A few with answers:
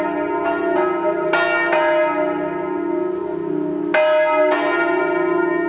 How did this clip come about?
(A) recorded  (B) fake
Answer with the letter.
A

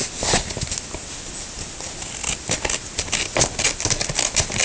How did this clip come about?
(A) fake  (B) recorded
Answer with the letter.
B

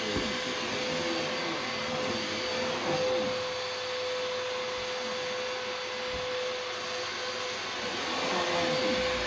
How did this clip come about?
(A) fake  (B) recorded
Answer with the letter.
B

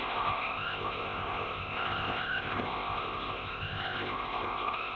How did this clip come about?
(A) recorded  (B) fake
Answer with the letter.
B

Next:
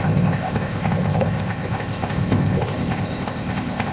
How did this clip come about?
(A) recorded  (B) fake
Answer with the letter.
B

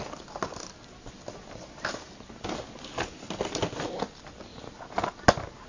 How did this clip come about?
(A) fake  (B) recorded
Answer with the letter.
B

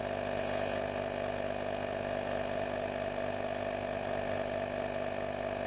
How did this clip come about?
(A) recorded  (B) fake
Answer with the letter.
A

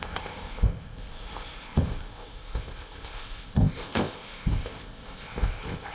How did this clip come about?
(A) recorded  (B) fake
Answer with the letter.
B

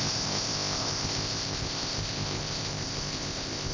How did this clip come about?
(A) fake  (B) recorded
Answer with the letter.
A